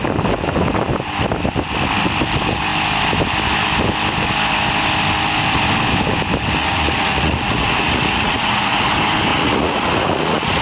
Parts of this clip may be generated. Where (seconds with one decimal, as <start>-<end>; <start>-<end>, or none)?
6.6-8.9; 9.3-10.6